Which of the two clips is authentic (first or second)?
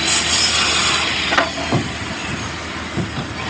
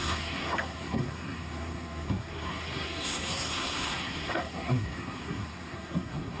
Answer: first